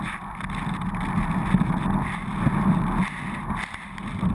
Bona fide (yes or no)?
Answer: yes